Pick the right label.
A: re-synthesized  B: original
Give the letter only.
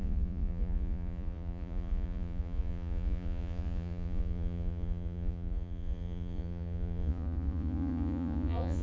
A